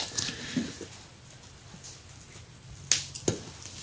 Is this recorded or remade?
recorded